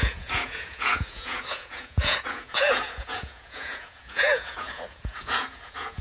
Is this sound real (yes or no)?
no